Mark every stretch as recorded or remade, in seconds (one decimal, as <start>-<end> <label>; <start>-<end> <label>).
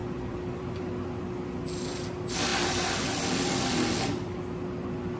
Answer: 0.0-0.8 remade; 0.8-2.5 recorded; 2.5-4.4 remade; 4.4-5.2 recorded